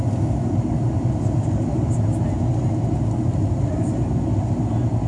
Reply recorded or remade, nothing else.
recorded